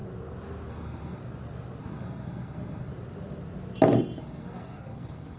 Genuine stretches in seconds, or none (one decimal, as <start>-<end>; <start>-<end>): 0.0-0.7; 1.2-1.8; 2.9-4.2